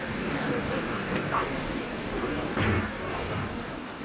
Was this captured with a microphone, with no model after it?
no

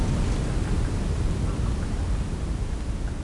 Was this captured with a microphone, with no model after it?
yes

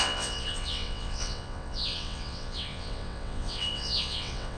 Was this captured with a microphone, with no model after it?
no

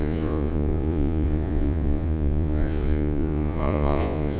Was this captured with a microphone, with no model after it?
no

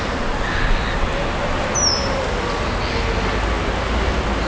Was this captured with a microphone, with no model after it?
yes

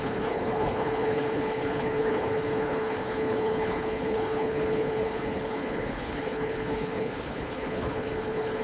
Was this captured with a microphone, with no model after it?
no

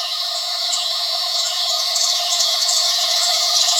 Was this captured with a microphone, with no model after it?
no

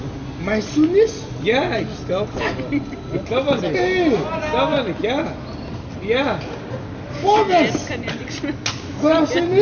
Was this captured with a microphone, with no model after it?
yes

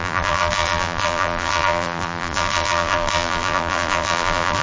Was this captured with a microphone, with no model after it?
no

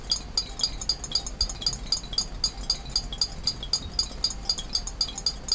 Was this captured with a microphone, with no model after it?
yes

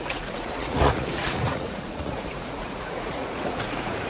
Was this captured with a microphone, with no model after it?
no